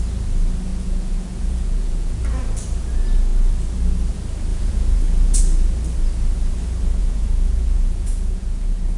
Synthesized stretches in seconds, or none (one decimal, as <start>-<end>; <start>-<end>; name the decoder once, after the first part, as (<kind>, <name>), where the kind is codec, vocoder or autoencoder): 0.7-2.2 (vocoder, Vocos); 4.5-5.4; 7.0-9.0